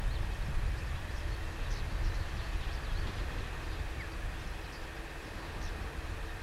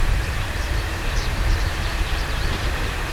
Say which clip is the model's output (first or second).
second